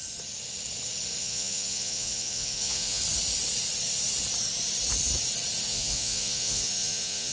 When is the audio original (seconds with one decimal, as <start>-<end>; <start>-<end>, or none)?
0.0-1.2; 3.0-5.7